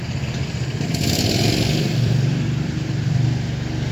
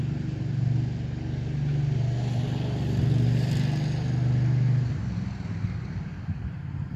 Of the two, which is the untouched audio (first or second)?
second